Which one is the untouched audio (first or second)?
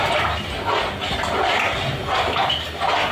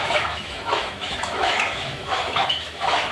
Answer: first